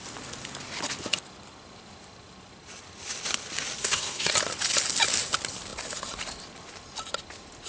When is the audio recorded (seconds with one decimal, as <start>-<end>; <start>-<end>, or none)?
0.0-3.8; 4.3-7.7